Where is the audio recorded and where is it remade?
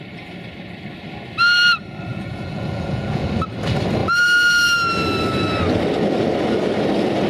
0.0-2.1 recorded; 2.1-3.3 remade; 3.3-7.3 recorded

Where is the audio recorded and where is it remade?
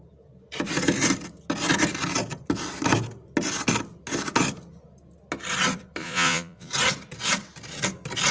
0.0-6.0 recorded; 6.0-6.7 remade; 6.7-8.3 recorded